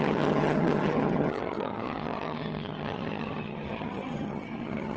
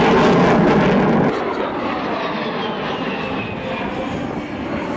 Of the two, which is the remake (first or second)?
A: first